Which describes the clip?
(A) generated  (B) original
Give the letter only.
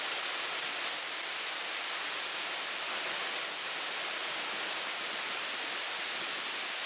B